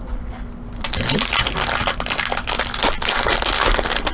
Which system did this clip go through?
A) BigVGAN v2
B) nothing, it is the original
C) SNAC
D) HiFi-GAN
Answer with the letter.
B